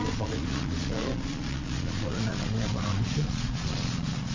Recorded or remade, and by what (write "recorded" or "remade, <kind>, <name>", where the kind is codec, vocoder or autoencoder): remade, vocoder, Vocos